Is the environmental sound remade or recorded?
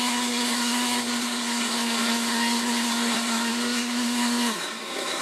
remade